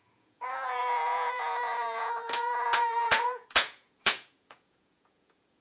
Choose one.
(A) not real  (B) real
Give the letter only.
A